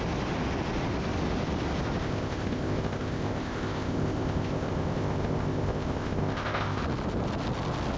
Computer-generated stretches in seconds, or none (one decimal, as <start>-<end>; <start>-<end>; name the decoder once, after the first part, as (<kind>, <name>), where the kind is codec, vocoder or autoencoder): 2.0-6.8 (codec, ZipCodec)